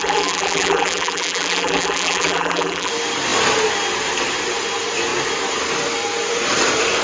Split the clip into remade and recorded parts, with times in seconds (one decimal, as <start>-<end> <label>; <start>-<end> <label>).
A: 0.0-2.9 remade; 2.9-7.0 recorded